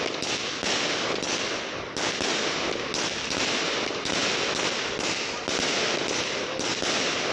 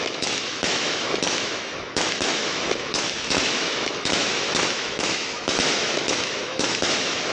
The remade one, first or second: second